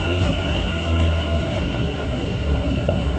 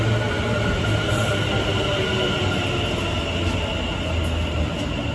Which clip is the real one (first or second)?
second